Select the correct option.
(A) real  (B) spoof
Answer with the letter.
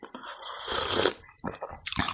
B